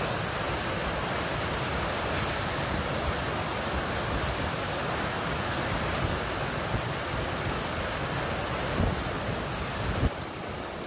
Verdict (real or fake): real